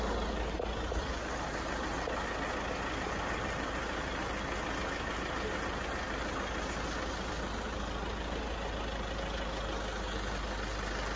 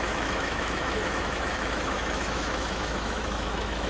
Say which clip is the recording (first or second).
first